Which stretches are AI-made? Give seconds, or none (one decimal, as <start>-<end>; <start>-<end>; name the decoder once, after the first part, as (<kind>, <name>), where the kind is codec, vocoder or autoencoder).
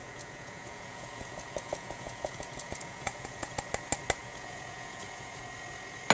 0.0-3.5 (vocoder, Vocos); 4.2-5.4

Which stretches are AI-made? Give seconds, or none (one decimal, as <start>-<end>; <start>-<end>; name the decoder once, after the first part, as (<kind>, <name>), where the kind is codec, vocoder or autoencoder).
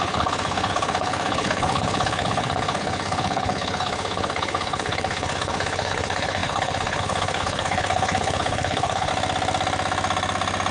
0.0-9.1 (codec, HILCodec)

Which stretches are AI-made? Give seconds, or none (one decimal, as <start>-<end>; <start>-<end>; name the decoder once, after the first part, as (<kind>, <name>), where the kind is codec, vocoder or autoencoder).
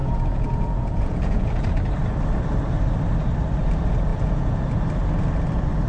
0.0-1.7 (vocoder, Vocos); 4.1-4.6